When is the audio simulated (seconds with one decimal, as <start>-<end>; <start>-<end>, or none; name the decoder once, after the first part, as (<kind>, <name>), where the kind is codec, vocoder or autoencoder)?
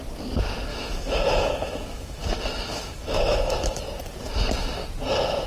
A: 0.7-3.8 (autoencoder, DAC-VAE)